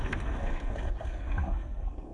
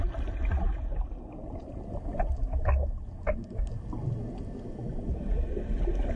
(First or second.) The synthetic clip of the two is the first